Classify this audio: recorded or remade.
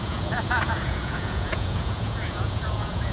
remade